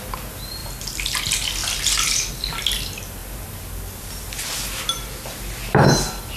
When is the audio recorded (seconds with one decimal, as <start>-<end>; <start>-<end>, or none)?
0.0-0.6; 1.2-6.4

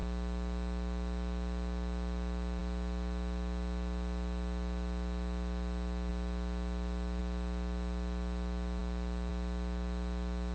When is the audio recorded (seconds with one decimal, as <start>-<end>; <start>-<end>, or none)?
0.0-10.5

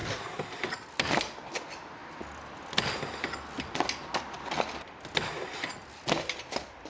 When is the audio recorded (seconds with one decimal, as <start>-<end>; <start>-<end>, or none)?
0.0-6.9

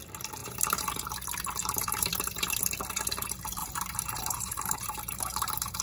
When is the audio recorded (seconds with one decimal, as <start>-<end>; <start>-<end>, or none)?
0.0-0.4; 0.9-1.6; 2.6-3.6

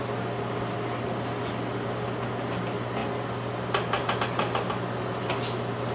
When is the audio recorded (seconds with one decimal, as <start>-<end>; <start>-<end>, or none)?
0.0-5.9

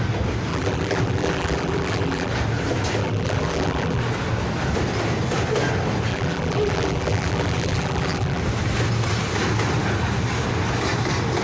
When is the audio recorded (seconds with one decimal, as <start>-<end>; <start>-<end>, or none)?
0.0-0.5; 2.3-3.0; 4.0-6.1; 8.4-11.4

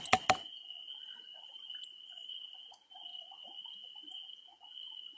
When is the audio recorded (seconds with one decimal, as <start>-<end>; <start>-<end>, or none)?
0.0-1.0; 1.9-3.1; 3.6-5.2

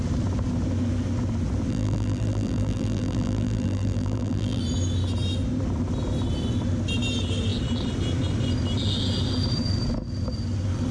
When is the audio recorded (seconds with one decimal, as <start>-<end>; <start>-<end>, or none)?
0.0-1.7; 4.6-10.9